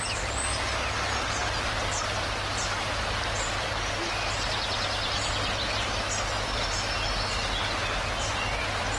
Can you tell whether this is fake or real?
real